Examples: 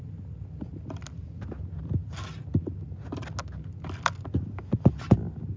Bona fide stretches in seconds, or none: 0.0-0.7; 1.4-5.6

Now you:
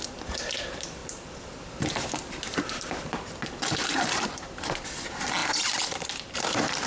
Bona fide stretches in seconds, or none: none

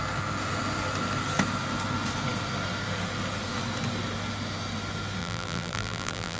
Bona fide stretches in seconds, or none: 0.0-5.2

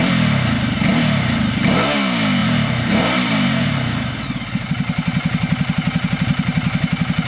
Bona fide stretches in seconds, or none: 0.0-0.9; 1.6-2.4; 4.2-7.3